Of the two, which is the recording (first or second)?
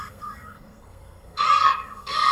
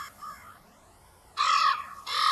second